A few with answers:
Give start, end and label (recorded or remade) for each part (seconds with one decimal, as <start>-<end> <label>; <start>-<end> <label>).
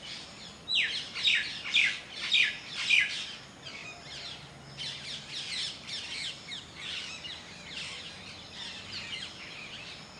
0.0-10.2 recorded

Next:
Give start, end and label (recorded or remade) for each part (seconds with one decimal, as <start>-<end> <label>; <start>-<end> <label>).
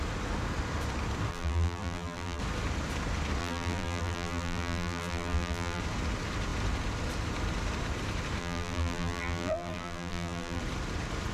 0.0-1.3 recorded; 1.3-2.4 remade; 2.4-3.4 recorded; 3.4-5.8 remade; 5.8-8.4 recorded; 8.4-10.6 remade; 10.6-11.3 recorded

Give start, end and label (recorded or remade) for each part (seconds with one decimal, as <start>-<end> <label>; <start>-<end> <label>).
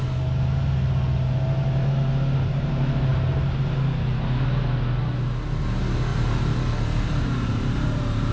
0.0-6.1 recorded; 6.1-8.3 remade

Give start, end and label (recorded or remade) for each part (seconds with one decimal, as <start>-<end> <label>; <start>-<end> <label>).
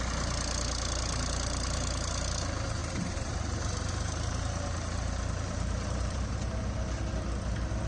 0.0-2.8 recorded; 2.8-6.3 remade; 6.3-7.9 recorded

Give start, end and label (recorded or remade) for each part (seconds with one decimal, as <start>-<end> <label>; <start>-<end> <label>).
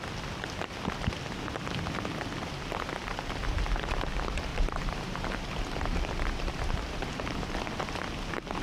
0.0-4.5 recorded; 4.5-7.4 remade; 7.4-8.6 recorded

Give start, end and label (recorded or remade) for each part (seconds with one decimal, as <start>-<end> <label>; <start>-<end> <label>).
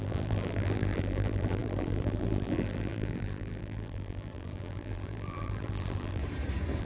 0.0-6.2 remade; 6.2-6.8 recorded